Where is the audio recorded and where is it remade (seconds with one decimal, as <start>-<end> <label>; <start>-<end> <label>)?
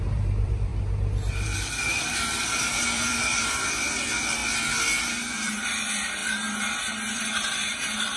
0.0-0.7 remade; 0.7-1.3 recorded; 1.3-4.4 remade; 4.4-5.0 recorded; 5.0-8.2 remade